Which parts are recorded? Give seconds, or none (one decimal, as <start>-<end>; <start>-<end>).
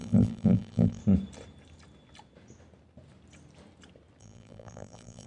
1.0-4.2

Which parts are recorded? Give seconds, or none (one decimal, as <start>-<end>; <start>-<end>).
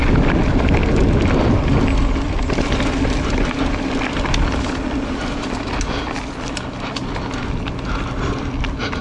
0.0-9.0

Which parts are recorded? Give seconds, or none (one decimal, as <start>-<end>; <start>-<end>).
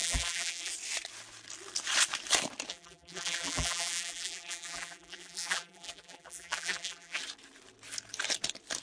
0.7-2.7; 7.2-8.8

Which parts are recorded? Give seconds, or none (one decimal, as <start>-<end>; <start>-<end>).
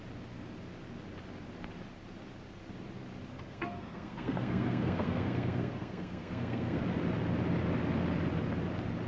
0.0-3.3; 6.8-9.1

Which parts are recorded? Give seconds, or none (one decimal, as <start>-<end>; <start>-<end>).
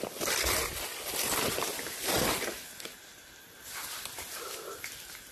0.0-5.3